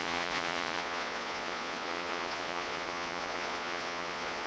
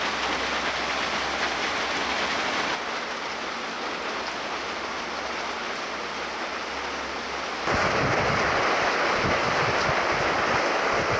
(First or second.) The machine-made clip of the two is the first